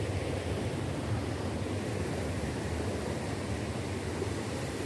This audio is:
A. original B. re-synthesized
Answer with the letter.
A